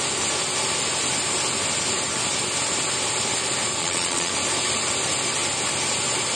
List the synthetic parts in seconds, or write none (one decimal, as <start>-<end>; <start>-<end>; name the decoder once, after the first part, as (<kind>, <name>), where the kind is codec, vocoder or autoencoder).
3.8-4.3 (vocoder, Vocos)